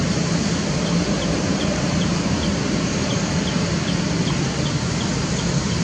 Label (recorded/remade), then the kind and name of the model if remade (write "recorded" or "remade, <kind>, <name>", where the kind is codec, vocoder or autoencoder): remade, vocoder, BigVGAN v2